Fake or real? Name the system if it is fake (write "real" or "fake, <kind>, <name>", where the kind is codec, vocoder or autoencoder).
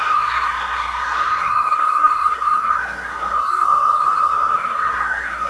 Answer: fake, codec, SNAC